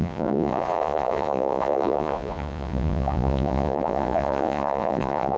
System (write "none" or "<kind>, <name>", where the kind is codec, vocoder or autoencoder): vocoder, Vocos